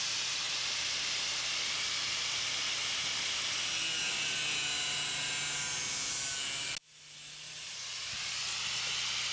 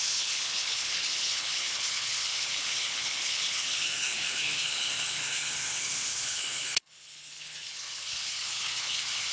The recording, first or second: first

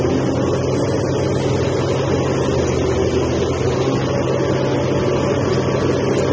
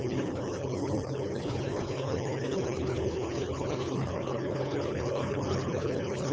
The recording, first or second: first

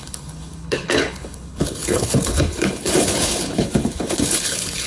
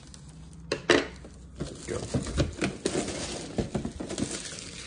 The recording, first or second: second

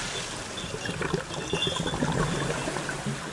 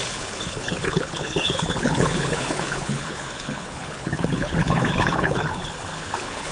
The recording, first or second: first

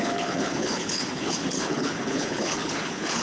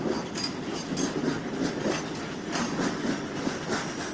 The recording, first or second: second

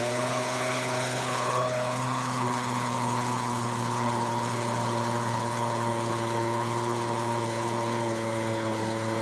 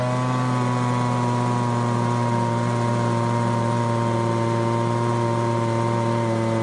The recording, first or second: second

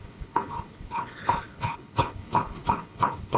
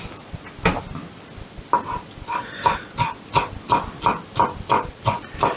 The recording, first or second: second